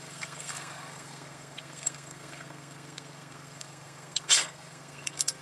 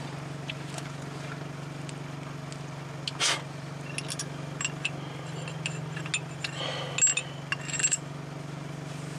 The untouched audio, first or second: second